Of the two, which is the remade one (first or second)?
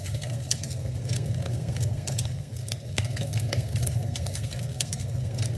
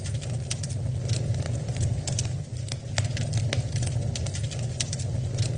first